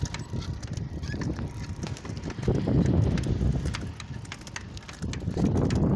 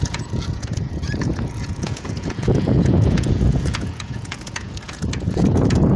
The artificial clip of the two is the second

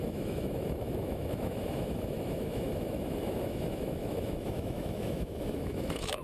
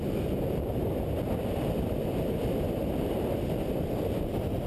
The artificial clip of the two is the first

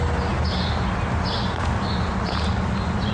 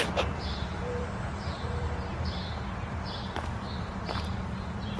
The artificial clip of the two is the second